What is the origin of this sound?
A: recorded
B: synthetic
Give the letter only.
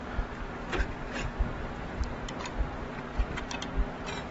A